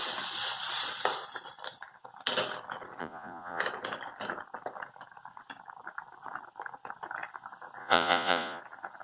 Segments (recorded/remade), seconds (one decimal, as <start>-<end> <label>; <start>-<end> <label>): 0.0-3.0 recorded; 3.0-3.6 remade; 3.6-7.8 recorded; 7.8-8.6 remade; 8.6-9.0 recorded